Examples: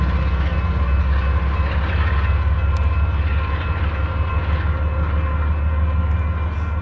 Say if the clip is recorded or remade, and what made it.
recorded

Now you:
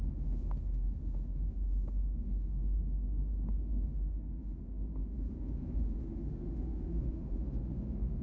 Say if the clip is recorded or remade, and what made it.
remade, autoencoder, DAC-VAE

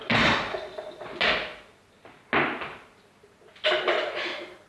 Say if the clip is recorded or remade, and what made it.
recorded